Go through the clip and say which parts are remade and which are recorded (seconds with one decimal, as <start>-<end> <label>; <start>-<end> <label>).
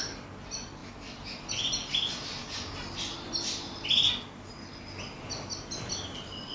0.0-6.5 recorded